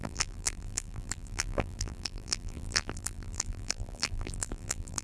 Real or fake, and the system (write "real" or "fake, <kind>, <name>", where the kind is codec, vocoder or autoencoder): fake, vocoder, BigVGAN v2